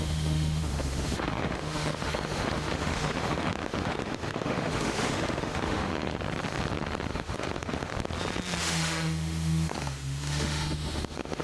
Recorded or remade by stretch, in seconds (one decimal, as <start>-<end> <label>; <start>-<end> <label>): 0.0-6.1 remade; 6.1-7.1 recorded; 7.1-7.9 remade; 7.9-8.6 recorded; 8.6-11.4 remade